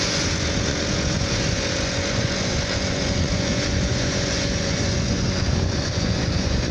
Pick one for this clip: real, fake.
fake